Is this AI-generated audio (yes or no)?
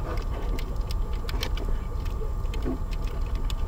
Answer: no